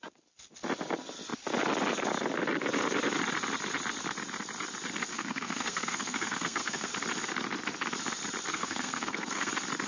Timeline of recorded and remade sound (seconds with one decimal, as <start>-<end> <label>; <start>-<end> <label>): 0.0-5.1 recorded; 5.1-6.9 remade; 6.9-8.5 recorded; 8.5-9.5 remade; 9.5-9.9 recorded